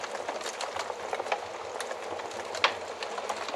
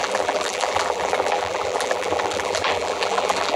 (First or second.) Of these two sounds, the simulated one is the second